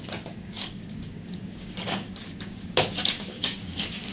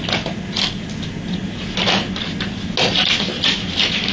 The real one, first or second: second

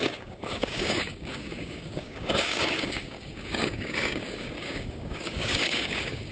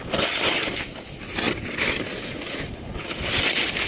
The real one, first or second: second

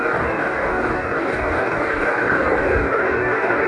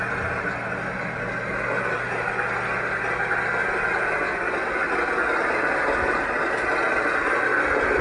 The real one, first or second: second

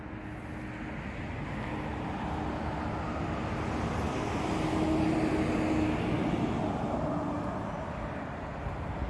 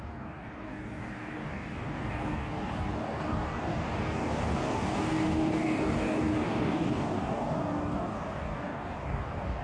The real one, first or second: first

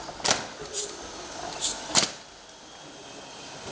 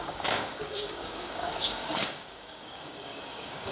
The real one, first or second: first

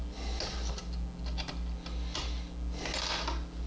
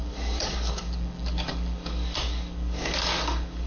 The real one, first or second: first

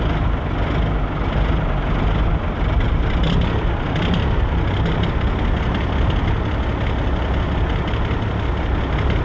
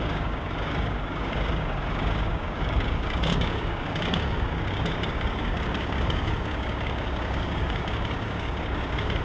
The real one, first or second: first